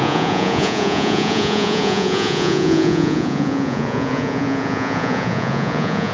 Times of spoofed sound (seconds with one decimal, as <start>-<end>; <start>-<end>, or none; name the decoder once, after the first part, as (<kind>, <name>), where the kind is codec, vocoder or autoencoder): 0.0-6.1 (vocoder, Vocos)